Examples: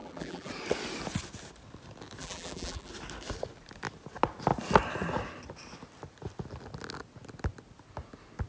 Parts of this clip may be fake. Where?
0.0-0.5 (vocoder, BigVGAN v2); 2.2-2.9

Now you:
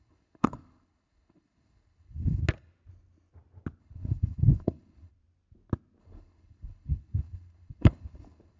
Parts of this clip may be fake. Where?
0.0-2.4 (codec, HILCodec); 3.8-5.1; 6.0-8.6

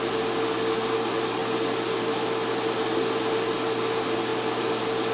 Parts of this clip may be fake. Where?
none

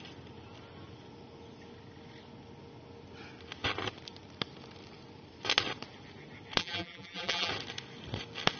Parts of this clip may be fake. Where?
6.6-7.5 (vocoder, BigVGAN v2)

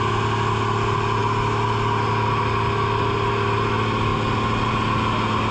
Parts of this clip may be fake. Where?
none